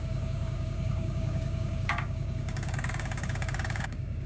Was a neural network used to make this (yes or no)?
yes